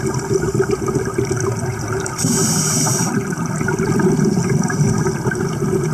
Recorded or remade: recorded